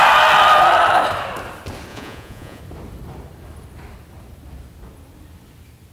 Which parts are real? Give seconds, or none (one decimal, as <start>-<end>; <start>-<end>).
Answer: 0.0-1.9; 2.6-5.9